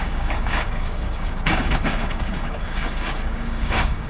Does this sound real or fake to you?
fake